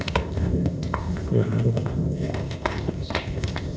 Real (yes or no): no